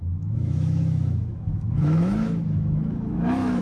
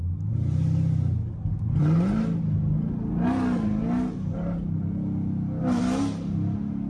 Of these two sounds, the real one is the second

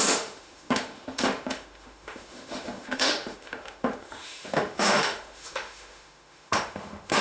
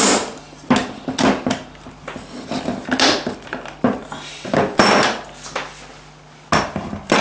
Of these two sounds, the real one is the second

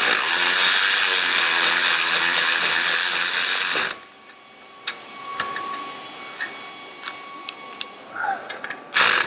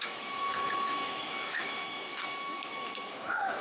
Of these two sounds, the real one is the first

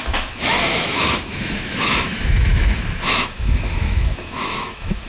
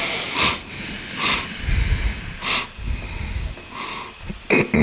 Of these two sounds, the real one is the second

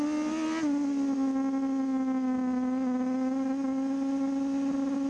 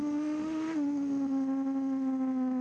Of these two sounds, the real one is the first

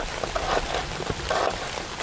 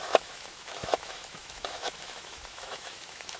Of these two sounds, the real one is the first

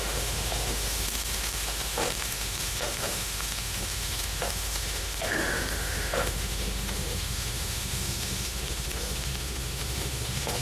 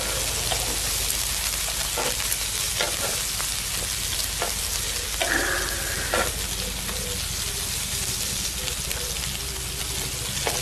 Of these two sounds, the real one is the second